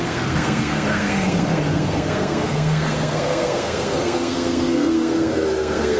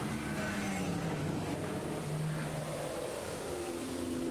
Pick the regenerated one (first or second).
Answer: first